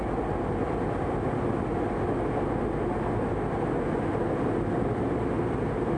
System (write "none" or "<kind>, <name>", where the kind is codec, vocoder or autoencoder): none